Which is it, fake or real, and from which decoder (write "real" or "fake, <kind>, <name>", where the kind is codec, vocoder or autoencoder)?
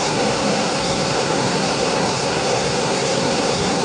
fake, codec, SNAC